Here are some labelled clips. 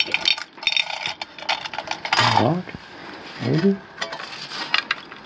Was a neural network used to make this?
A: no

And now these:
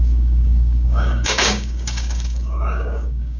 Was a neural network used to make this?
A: yes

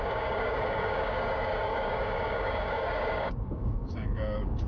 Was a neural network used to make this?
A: yes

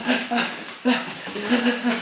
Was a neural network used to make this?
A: yes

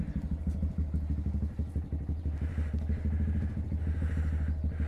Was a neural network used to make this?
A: no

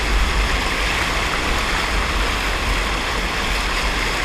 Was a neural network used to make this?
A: no